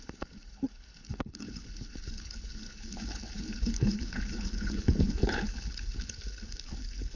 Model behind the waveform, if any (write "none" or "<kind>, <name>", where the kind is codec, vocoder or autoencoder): codec, HILCodec